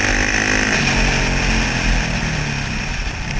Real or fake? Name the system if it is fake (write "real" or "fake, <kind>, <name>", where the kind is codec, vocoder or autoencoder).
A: real